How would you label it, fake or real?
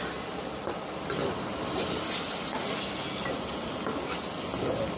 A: real